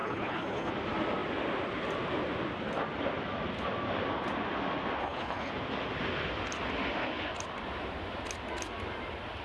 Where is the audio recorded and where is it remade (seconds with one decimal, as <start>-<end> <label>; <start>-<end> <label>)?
0.0-0.7 remade; 0.7-5.0 recorded; 5.0-5.5 remade; 5.5-9.4 recorded